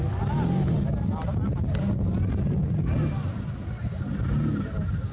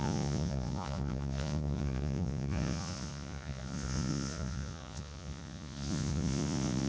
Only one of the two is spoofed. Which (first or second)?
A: second